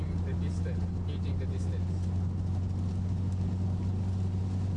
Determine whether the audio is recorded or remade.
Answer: recorded